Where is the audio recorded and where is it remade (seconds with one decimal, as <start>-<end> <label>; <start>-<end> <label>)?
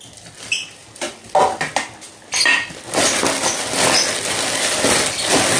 0.0-5.6 recorded